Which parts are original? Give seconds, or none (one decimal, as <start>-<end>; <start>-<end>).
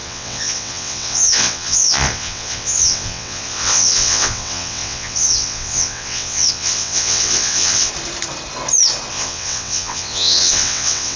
7.9-9.1